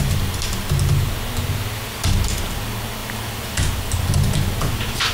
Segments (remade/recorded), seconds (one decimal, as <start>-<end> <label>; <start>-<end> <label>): 0.0-5.1 recorded